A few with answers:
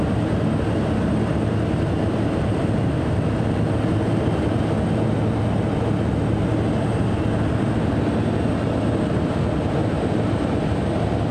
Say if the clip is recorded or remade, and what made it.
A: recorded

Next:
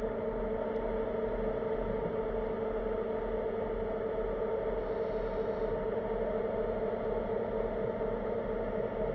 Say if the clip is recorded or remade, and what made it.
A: recorded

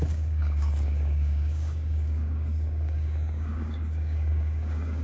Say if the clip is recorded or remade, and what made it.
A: remade, codec, DAC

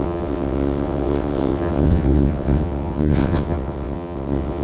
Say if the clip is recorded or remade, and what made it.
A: remade, vocoder, WaveNeXt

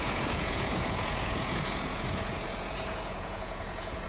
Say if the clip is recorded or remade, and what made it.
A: remade, vocoder, Vocos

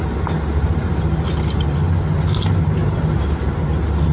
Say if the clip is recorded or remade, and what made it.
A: recorded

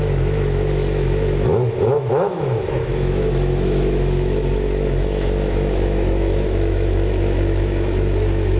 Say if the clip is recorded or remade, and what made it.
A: remade, autoencoder, DAC-VAE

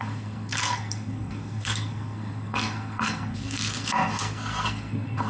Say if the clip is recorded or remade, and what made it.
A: remade, codec, SNAC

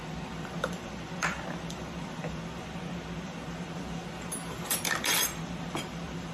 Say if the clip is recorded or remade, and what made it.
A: remade, vocoder, BigVGAN v2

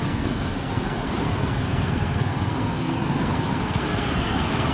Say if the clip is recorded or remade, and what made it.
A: remade, codec, SNAC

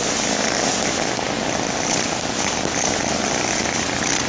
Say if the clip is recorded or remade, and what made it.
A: recorded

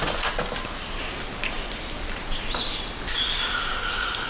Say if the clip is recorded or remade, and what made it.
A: recorded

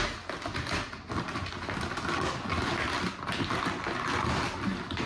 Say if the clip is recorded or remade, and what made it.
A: recorded